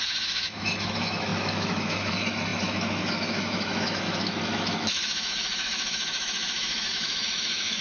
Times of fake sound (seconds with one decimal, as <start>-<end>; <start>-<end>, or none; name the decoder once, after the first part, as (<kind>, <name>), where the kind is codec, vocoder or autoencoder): 0.0-7.8 (autoencoder, DAC-VAE)